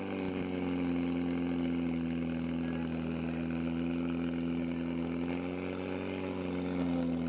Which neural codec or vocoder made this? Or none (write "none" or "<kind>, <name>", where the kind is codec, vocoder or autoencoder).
none